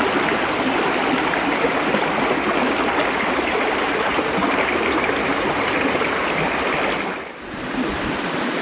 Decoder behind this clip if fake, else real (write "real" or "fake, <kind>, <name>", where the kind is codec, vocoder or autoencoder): fake, vocoder, BigVGAN v2